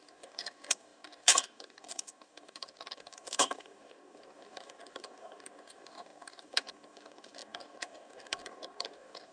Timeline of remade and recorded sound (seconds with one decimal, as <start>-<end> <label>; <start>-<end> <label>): 0.0-9.3 remade

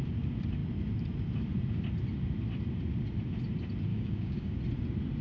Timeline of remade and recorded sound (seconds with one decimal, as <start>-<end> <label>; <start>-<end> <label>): 0.0-3.9 recorded; 3.9-4.6 remade; 4.6-5.2 recorded

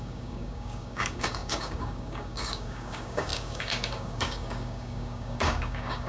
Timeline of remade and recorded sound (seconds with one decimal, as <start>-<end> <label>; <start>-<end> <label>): 0.0-6.1 remade

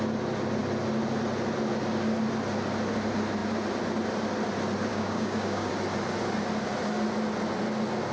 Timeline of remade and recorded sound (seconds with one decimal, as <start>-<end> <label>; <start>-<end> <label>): 0.0-4.9 recorded; 4.9-5.7 remade; 5.7-8.1 recorded

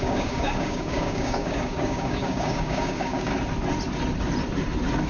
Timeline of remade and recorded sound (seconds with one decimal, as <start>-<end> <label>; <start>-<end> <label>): 0.0-3.3 remade; 3.3-5.1 recorded